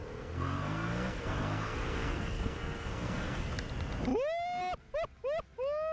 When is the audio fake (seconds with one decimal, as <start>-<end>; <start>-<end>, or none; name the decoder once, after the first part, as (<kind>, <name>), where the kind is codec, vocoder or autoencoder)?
0.0-3.5 (codec, SNAC)